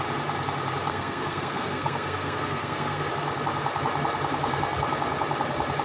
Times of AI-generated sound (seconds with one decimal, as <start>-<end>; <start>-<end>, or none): 0.9-3.1